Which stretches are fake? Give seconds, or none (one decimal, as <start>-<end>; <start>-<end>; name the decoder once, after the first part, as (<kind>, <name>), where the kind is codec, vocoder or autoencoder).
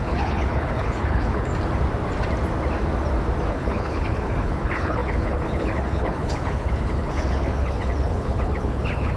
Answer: 0.0-1.5 (codec, HILCodec); 3.5-9.2